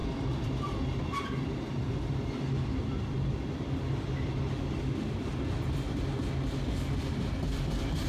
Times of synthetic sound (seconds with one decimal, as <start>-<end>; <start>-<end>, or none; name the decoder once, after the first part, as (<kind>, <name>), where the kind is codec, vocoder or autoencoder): none